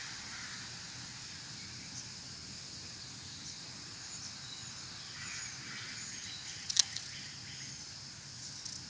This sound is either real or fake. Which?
real